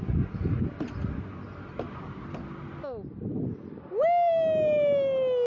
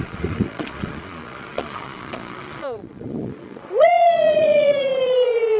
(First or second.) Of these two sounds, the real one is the first